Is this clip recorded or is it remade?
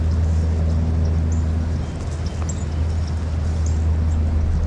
recorded